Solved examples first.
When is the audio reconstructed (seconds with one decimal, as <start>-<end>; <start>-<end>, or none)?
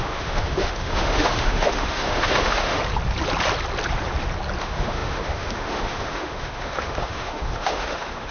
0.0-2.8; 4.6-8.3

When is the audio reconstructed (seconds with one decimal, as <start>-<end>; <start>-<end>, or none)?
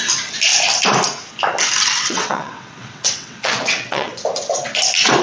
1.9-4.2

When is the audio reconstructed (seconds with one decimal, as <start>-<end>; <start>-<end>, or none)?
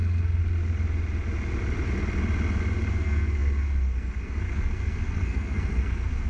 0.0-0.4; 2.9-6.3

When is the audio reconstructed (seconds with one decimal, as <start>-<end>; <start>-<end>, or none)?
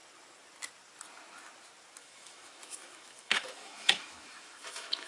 2.0-5.1